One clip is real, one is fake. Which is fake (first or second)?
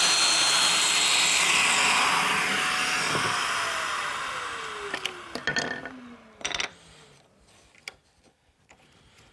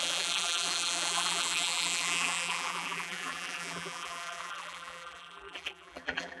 second